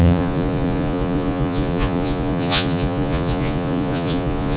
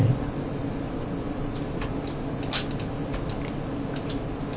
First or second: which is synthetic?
first